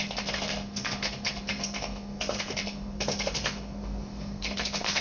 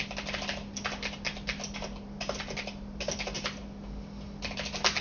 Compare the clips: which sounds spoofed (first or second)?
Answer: first